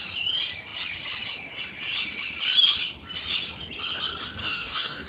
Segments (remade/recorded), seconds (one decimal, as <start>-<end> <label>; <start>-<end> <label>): 0.0-4.4 recorded; 4.4-5.1 remade